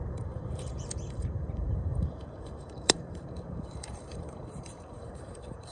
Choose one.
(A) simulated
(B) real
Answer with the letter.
A